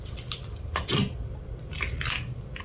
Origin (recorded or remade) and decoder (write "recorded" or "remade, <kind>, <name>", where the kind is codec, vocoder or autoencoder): recorded